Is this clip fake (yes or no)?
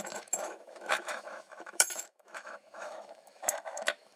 yes